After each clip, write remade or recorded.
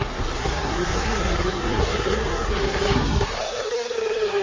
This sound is remade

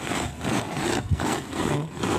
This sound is remade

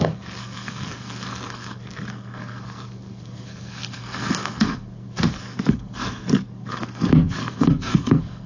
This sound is remade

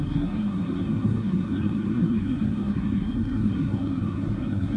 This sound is remade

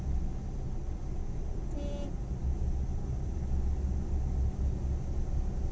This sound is recorded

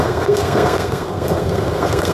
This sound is remade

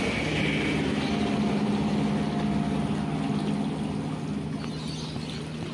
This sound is recorded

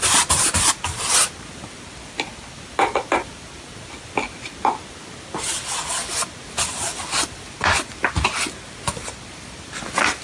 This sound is recorded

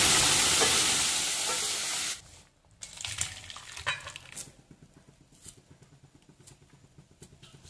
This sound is recorded